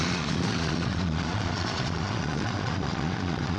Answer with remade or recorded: remade